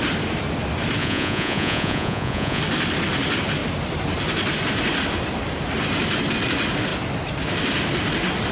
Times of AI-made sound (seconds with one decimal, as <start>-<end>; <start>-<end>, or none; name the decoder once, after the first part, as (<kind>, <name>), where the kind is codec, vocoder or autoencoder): 1.0-2.6 (vocoder, Vocos)